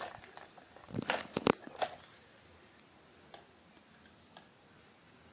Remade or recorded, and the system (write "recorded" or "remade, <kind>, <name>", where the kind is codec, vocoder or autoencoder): recorded